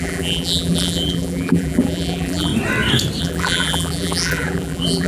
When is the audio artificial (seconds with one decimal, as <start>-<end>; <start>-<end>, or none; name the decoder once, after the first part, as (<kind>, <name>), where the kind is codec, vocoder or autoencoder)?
0.0-2.5 (vocoder, BigVGAN v2); 3.2-5.1